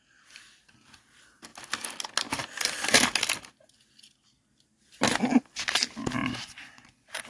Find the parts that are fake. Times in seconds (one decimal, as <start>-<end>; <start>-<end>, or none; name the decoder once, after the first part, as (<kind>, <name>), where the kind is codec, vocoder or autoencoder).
6.2-7.3 (vocoder, Vocos)